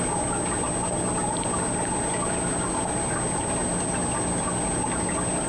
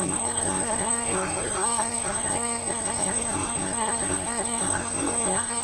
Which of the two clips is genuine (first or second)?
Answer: first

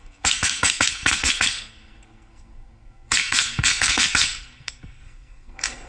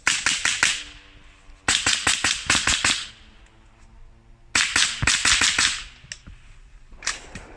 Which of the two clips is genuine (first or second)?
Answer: second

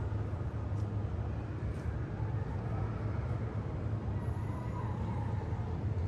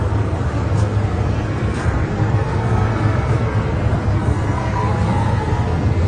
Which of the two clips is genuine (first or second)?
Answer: first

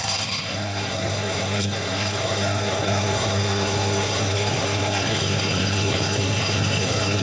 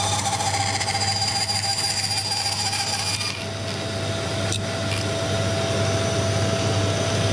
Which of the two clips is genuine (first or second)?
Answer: second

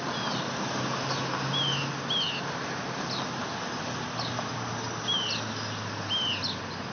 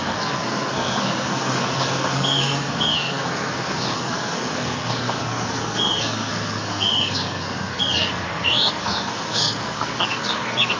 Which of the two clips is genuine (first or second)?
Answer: first